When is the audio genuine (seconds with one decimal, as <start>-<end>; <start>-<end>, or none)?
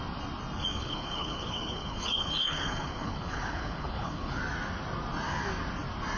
0.0-0.7; 4.4-6.2